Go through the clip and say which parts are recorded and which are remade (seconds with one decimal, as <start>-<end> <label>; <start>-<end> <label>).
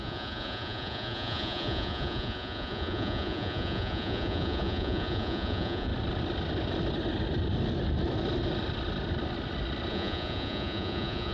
0.0-5.9 remade; 5.9-9.9 recorded; 9.9-11.3 remade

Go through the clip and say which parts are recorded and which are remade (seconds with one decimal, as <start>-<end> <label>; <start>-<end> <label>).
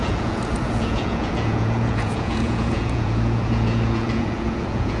0.0-5.0 remade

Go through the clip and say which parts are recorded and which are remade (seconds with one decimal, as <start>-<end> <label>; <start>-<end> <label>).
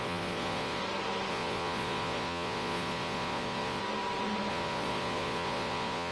0.0-0.8 remade; 0.8-1.3 recorded; 1.3-3.8 remade; 3.8-4.5 recorded; 4.5-6.1 remade